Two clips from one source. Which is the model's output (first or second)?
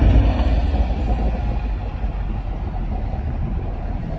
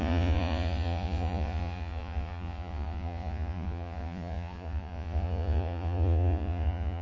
second